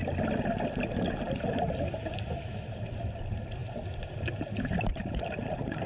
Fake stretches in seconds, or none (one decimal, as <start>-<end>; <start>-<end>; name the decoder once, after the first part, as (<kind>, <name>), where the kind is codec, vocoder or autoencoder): 1.5-5.9 (vocoder, BigVGAN v2)